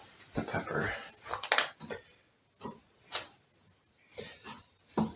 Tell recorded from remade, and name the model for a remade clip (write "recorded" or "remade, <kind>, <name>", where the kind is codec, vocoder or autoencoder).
recorded